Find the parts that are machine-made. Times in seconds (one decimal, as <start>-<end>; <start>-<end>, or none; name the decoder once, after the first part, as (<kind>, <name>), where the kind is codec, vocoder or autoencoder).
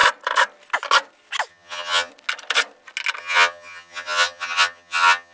1.5-2.1 (vocoder, HiFi-GAN); 3.2-5.3